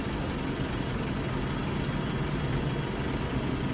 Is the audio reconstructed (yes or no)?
no